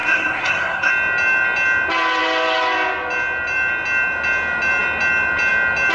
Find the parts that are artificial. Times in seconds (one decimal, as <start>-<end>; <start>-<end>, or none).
0.0-0.9